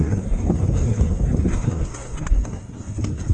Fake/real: fake